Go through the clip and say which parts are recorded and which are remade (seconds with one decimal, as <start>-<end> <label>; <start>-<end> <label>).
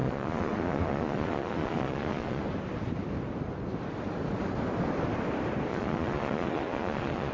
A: 0.0-2.4 remade; 2.4-5.7 recorded; 5.7-7.3 remade